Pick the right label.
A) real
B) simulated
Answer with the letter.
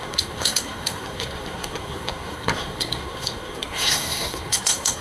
B